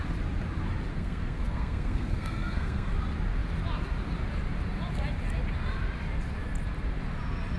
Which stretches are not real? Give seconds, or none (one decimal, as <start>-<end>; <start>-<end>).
0.9-2.9